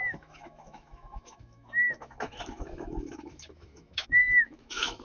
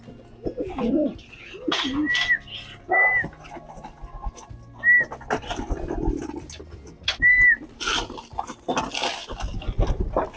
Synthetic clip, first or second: first